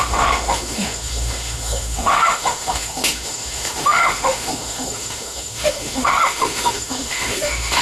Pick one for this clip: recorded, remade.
remade